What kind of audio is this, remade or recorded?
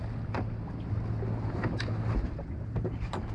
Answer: recorded